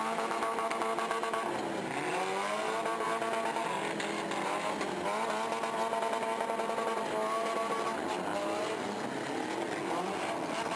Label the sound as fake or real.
real